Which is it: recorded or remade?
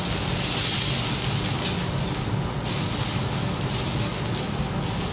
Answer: recorded